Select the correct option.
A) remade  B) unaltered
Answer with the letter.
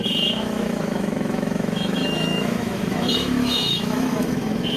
A